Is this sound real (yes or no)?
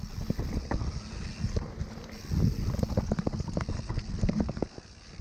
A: yes